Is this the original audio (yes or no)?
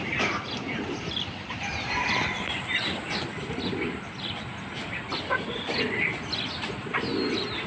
yes